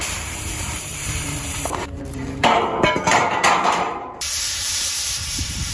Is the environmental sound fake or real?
fake